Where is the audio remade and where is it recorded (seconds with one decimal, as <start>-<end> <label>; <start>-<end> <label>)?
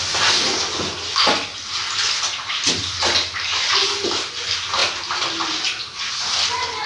0.0-6.9 recorded